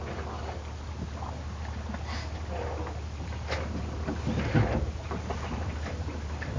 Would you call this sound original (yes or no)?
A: yes